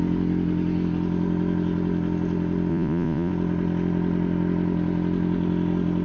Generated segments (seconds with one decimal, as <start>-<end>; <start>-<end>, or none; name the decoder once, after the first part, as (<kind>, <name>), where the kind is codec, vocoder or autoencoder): 2.7-3.3 (vocoder, Vocos)